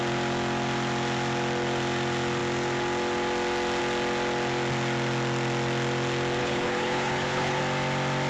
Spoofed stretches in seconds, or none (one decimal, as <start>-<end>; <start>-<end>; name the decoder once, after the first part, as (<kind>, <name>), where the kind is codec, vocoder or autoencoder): 6.4-7.6 (codec, HILCodec)